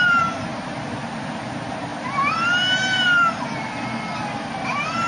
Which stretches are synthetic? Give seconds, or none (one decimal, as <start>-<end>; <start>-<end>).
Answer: none